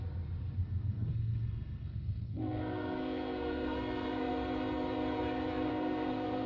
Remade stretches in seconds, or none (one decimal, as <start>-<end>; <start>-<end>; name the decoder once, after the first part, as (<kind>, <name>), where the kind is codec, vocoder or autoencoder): 0.6-4.3 (codec, SNAC); 5.7-6.5